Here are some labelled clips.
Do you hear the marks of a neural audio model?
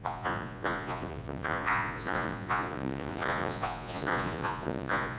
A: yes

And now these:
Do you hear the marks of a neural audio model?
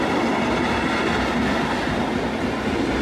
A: no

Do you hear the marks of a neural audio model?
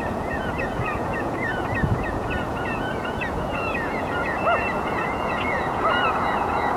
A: yes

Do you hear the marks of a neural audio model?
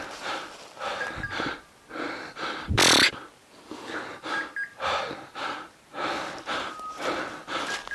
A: no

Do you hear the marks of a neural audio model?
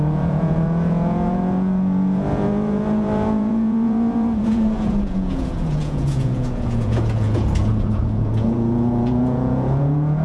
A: yes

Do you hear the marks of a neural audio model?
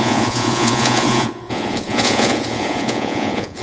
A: yes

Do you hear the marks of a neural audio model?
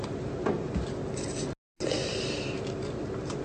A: no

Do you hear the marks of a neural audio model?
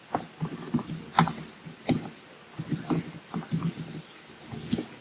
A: no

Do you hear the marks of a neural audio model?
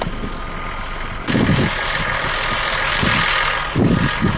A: no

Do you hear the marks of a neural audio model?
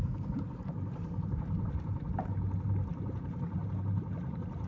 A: no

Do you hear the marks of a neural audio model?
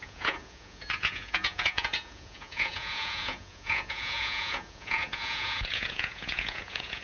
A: yes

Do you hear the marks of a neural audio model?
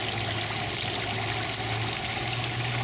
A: no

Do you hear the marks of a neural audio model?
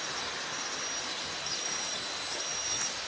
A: no